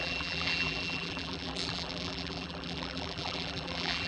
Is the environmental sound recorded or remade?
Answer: remade